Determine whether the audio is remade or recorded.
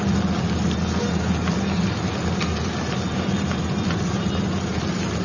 recorded